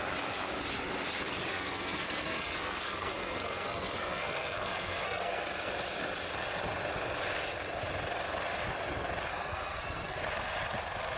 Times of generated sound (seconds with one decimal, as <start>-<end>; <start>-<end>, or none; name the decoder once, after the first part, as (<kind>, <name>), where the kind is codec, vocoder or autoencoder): 1.5-5.7 (codec, SNAC); 9.3-10.2